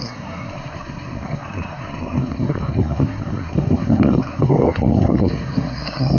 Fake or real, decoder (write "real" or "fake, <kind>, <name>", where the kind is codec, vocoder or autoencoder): fake, codec, SNAC